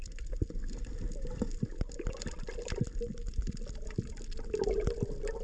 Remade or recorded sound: recorded